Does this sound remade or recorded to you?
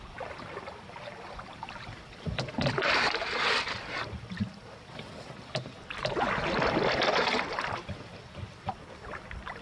recorded